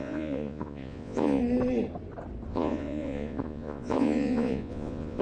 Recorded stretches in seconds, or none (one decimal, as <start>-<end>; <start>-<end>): 1.4-2.5

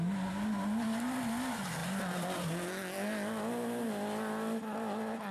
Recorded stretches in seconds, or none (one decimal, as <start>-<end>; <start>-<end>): 0.0-5.3

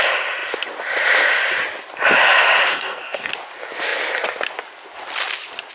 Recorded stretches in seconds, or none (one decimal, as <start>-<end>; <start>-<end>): 0.0-2.7; 3.3-5.7

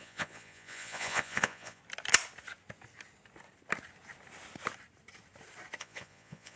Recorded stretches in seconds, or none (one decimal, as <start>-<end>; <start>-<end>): 1.8-5.8

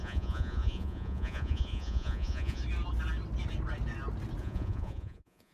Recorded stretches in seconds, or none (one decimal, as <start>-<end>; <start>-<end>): 2.6-4.4